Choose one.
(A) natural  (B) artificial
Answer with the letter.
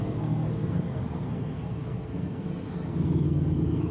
B